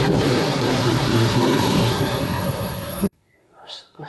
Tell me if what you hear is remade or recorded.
remade